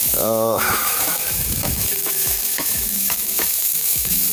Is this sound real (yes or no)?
no